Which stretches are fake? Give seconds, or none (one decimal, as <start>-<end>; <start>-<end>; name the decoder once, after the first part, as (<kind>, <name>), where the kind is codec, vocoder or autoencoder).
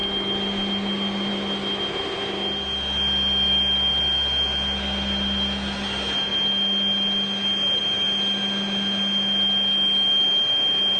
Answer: none